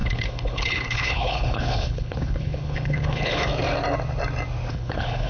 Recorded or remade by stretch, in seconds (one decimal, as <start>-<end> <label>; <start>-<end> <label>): 0.0-3.5 remade; 3.5-4.7 recorded; 4.7-5.3 remade